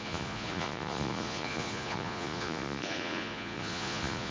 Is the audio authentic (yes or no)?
no